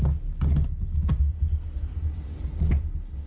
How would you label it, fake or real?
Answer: real